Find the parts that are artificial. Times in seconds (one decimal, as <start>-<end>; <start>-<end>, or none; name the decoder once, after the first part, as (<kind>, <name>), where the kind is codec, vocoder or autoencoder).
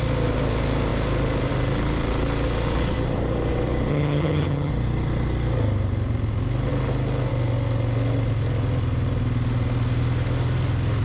3.9-4.7 (vocoder, HiFi-GAN)